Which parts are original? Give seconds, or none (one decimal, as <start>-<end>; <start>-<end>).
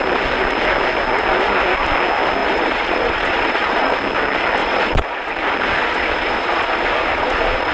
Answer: 0.0-2.4; 3.9-4.6; 5.3-5.8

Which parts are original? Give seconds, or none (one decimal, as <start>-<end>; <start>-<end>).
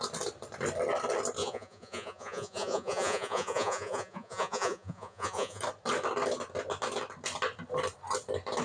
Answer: 0.0-1.4; 5.6-8.6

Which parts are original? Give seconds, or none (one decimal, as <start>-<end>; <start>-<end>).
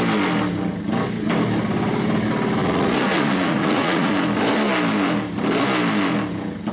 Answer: 0.0-2.6; 4.1-6.7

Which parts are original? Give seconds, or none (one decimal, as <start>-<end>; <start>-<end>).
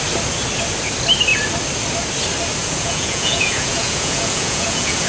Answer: 0.0-2.6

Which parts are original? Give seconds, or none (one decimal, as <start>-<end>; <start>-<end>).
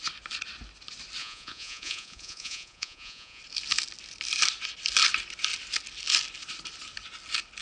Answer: 0.0-1.2; 3.4-7.6